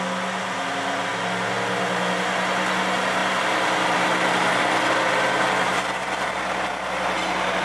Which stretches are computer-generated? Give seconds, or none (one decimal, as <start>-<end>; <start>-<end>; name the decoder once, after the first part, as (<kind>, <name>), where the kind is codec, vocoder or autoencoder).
none